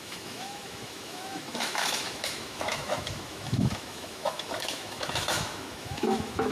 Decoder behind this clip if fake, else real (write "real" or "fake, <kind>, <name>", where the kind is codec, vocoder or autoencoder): fake, autoencoder, DAC-VAE